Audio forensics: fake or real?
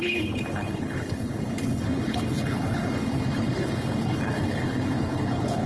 fake